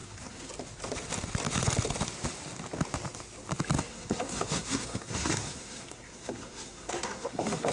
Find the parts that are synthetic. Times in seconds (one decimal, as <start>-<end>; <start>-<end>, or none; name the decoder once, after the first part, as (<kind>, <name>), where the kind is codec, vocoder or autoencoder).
0.0-0.5 (codec, SNAC); 3.9-7.7